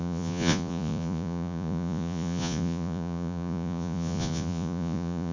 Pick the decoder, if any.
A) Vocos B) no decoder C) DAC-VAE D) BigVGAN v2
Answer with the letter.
A